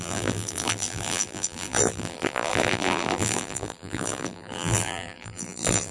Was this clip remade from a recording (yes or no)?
yes